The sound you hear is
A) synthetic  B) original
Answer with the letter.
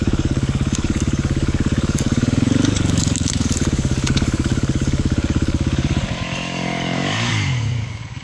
A